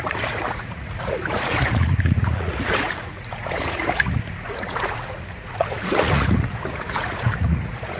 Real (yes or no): no